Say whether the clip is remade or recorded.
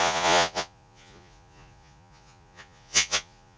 remade